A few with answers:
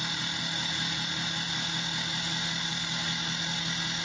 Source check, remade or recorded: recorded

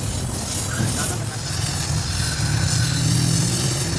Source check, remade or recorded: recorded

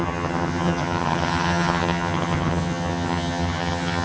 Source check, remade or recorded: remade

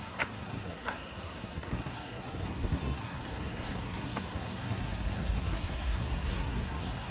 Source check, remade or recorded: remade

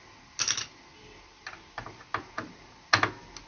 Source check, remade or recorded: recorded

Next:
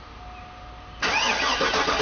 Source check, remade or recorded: recorded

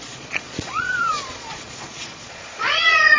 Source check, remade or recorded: remade